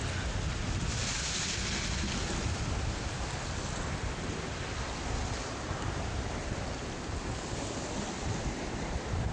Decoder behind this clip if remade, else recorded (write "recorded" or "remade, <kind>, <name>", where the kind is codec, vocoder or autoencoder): recorded